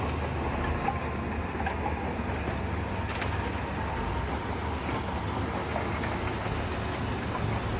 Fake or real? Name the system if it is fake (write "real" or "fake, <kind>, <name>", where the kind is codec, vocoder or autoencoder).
real